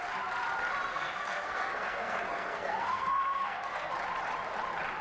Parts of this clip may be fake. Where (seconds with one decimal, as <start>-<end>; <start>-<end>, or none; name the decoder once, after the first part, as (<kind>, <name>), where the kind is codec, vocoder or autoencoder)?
0.9-3.9 (codec, SNAC)